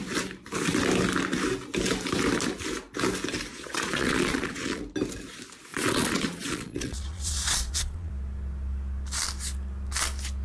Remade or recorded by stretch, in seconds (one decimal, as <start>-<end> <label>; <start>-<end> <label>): 0.0-3.5 recorded; 3.5-4.8 remade; 4.8-5.7 recorded; 5.7-8.1 remade; 8.1-10.4 recorded